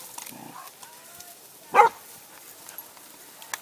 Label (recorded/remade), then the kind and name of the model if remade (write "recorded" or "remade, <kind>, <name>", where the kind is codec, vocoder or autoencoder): recorded